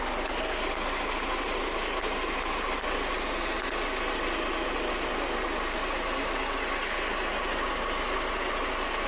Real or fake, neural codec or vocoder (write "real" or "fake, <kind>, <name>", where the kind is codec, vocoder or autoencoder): real